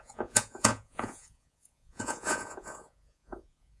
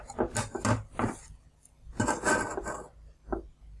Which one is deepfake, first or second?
first